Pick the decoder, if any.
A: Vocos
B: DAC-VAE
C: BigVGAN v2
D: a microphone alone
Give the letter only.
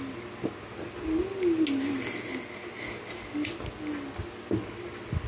D